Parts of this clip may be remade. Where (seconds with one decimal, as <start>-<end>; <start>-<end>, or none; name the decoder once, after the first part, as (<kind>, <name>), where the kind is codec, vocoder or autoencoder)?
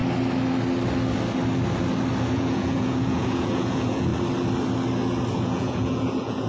2.3-4.1 (vocoder, Vocos); 5.3-6.5